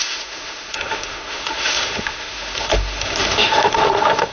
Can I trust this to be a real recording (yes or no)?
no